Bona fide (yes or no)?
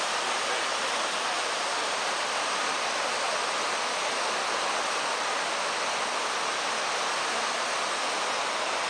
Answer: yes